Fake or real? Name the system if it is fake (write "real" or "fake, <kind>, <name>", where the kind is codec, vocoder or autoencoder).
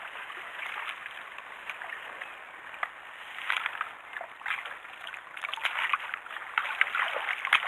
real